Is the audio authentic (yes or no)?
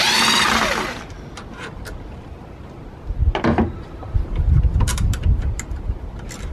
yes